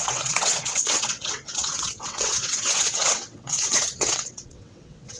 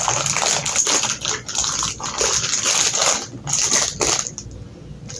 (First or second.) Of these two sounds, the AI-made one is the first